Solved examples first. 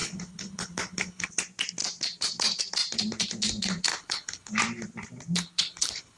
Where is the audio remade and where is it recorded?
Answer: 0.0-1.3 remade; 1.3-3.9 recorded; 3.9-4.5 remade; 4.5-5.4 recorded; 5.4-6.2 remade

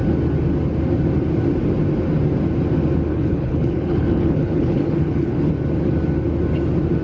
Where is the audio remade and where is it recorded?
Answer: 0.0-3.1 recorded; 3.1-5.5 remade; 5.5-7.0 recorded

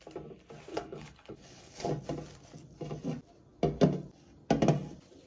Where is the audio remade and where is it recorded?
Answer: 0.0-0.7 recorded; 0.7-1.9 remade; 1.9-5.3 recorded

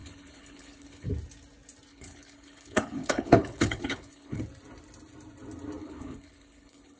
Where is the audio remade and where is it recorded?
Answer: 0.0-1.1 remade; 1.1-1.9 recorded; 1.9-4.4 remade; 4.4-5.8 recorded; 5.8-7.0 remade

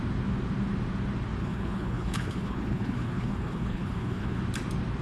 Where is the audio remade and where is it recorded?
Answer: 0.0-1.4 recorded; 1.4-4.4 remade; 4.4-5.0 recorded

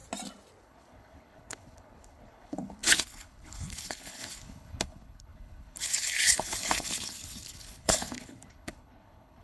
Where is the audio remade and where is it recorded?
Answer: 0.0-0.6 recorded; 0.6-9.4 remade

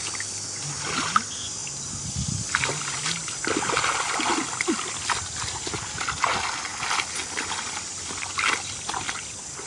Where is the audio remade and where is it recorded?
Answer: 0.0-9.7 recorded

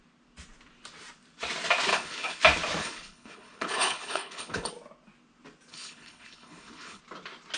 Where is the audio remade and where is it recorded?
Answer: 0.0-1.9 recorded; 1.9-2.4 remade; 2.4-2.8 recorded; 2.8-4.7 remade; 4.7-5.7 recorded; 5.7-7.0 remade; 7.0-7.6 recorded